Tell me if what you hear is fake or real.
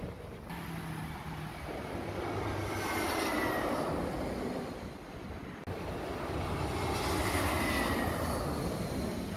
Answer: real